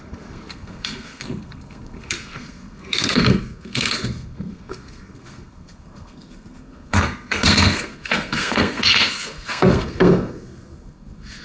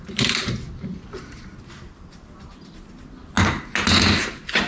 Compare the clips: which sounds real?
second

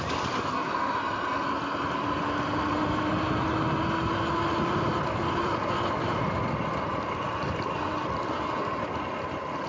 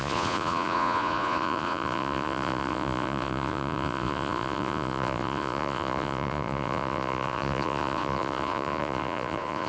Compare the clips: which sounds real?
first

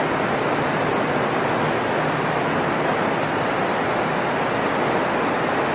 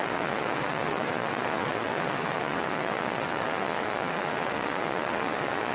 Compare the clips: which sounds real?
first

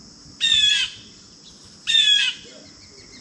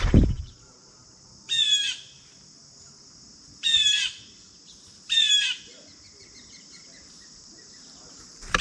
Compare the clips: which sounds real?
first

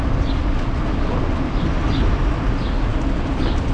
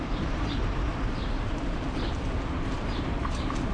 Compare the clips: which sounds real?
first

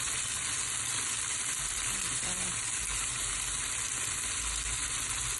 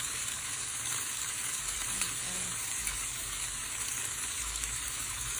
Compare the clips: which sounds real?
first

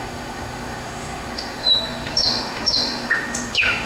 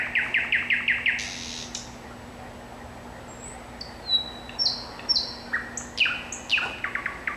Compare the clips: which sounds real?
second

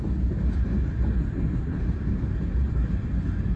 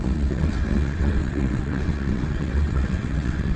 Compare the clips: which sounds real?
first